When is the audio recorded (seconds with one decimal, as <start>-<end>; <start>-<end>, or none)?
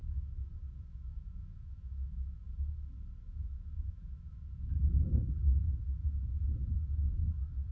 0.5-0.9; 2.4-3.2; 6.4-7.7